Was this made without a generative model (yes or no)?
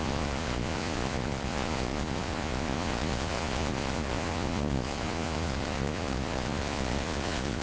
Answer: no